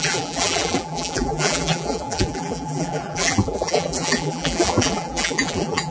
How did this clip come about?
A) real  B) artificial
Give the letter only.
B